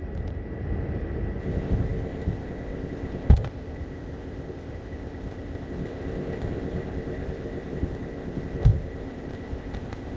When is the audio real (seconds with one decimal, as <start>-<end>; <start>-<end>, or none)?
0.0-1.4

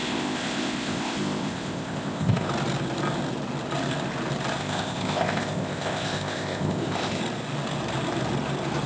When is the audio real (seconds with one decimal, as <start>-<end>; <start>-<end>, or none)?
2.5-4.6; 7.2-8.9

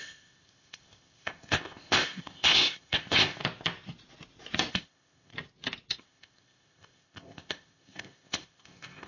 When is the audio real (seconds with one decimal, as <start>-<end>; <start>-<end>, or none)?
3.4-4.7; 5.3-6.0

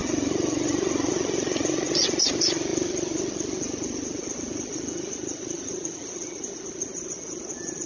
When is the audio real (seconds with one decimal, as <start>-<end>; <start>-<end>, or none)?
0.0-7.9

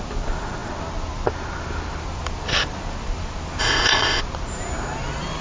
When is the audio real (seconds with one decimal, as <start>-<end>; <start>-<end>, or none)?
0.0-3.6; 4.2-5.4

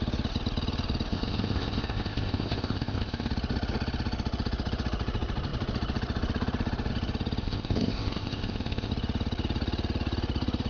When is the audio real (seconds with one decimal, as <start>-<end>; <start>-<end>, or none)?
0.0-1.1; 3.3-7.4; 8.9-10.7

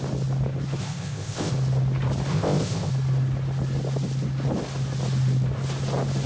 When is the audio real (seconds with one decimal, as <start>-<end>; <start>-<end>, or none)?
0.0-0.8; 1.5-2.3; 2.9-6.3